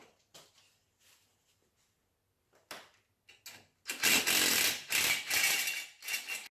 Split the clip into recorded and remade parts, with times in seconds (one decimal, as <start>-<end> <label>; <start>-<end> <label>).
0.0-6.6 recorded